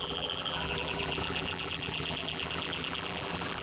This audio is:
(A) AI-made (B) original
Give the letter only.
A